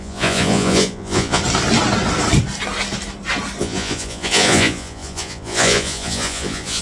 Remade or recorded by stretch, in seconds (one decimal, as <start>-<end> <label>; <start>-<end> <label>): 0.0-1.4 remade; 1.4-3.6 recorded; 3.6-6.8 remade